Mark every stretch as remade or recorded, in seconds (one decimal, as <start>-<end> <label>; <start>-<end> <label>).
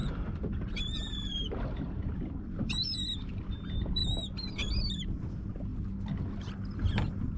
0.0-4.0 remade; 4.0-5.3 recorded; 5.3-7.4 remade